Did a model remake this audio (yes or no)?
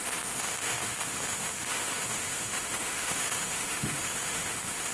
yes